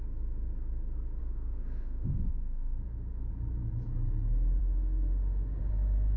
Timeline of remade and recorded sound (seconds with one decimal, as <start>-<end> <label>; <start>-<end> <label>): 0.0-1.2 recorded; 1.2-3.3 remade; 3.3-4.6 recorded; 4.6-5.6 remade; 5.6-6.2 recorded